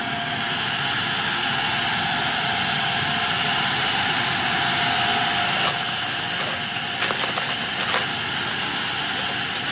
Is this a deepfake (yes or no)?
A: no